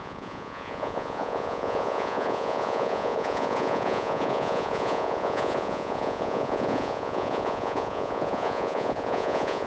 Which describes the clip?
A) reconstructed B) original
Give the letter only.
A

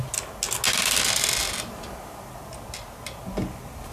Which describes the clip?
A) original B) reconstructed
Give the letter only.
A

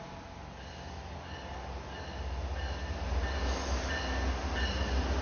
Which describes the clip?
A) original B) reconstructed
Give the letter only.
A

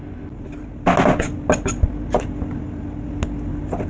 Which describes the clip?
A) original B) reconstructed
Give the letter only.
A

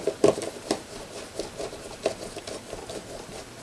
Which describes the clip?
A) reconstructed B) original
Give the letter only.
B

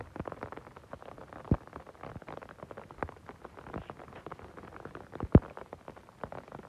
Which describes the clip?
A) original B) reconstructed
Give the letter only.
A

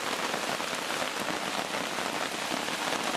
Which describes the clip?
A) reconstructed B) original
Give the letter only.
B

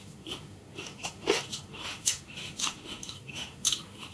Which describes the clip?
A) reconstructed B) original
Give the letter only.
A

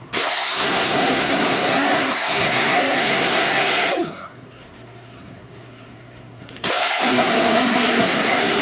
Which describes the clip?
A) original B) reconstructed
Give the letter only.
B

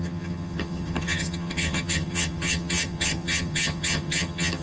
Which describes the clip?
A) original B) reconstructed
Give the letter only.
B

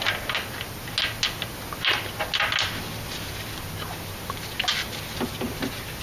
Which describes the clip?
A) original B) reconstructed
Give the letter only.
A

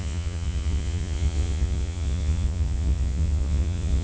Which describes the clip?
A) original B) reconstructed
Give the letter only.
B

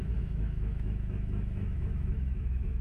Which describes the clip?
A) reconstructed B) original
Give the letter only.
A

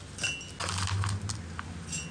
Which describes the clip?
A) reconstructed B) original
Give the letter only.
B